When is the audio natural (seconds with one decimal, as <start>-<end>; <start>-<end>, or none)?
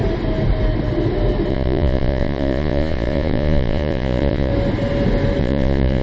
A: 0.0-1.5; 4.5-5.4